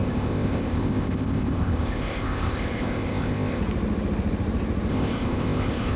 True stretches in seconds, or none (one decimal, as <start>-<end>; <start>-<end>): 3.6-4.9